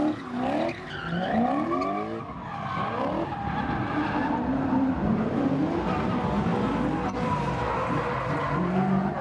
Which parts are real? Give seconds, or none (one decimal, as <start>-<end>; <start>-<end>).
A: 0.0-9.2